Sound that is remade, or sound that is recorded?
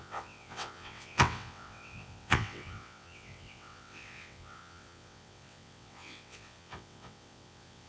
remade